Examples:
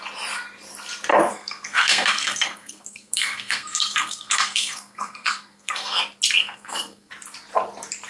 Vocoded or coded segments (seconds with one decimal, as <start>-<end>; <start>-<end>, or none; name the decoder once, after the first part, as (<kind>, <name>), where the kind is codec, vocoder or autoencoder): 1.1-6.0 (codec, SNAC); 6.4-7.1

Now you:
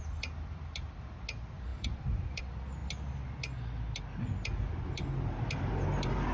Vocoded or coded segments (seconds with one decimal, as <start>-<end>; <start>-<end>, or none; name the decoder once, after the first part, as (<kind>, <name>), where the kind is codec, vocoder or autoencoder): 1.7-2.4 (vocoder, BigVGAN v2)

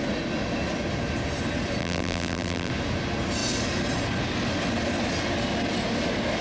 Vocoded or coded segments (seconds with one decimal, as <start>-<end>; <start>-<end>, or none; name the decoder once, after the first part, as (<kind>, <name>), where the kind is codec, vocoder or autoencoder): 1.8-2.7 (vocoder, BigVGAN v2)